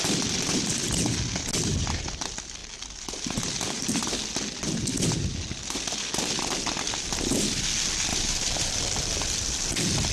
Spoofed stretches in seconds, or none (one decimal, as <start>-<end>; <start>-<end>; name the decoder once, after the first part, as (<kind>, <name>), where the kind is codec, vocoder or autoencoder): 8.1-8.8 (vocoder, BigVGAN v2)